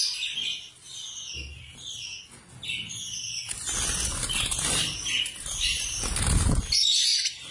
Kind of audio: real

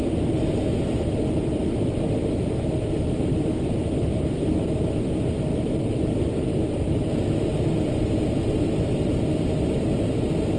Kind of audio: real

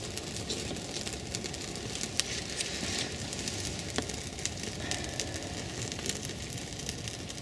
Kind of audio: real